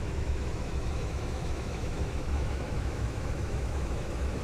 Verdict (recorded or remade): remade